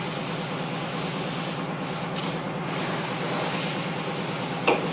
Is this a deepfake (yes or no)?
no